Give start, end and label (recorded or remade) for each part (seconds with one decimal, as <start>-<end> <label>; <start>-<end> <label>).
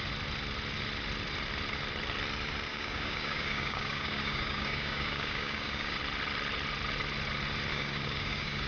0.0-2.7 recorded; 2.7-6.0 remade; 6.0-7.7 recorded; 7.7-8.7 remade